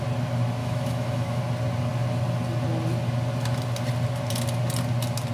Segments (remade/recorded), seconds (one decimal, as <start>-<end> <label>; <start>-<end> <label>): 0.0-0.6 recorded; 0.6-1.4 remade; 1.4-5.3 recorded